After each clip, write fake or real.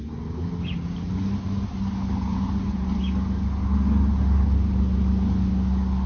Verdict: real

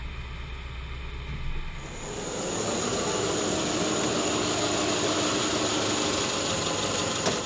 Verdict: real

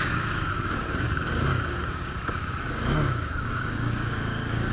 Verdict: fake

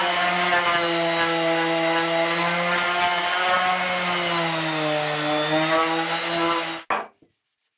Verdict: real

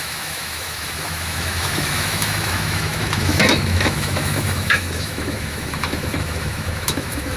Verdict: fake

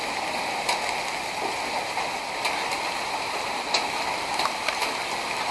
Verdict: real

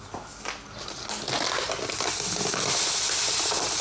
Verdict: real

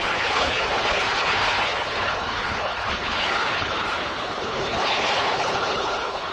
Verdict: fake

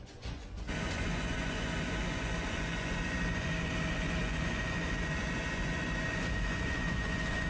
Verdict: fake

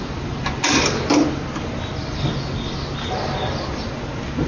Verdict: real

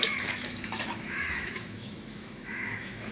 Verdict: fake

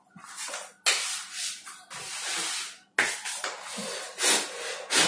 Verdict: real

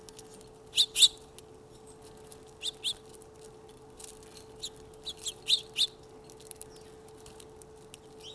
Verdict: real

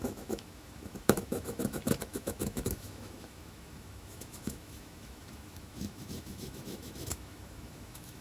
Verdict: fake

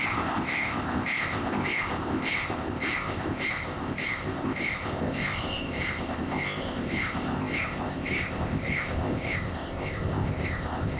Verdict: fake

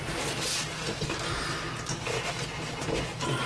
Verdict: real